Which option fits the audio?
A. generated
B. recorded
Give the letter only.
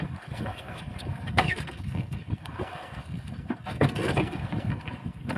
A